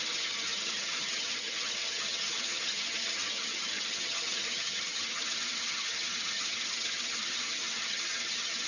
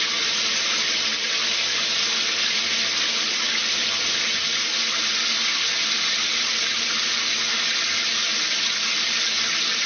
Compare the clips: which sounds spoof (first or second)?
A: first